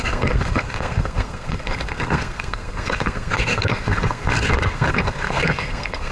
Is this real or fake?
fake